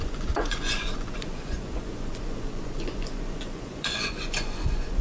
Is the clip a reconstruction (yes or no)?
yes